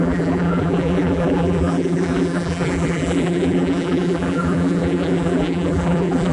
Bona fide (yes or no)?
no